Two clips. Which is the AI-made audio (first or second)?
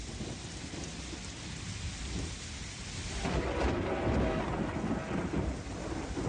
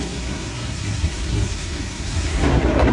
second